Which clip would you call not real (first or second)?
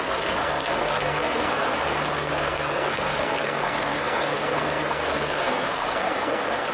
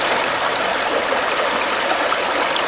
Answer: first